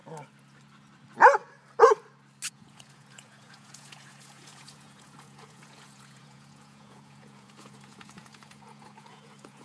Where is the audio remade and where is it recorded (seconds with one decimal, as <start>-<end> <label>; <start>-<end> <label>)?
0.0-2.5 recorded; 2.5-9.6 remade